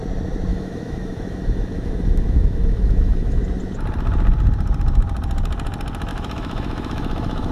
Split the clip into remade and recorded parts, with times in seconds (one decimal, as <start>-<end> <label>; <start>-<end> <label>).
0.0-0.5 recorded; 0.5-3.4 remade; 3.4-6.1 recorded; 6.1-7.5 remade